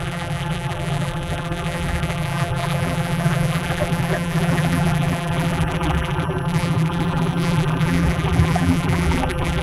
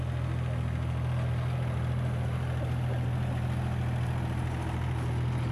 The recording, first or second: second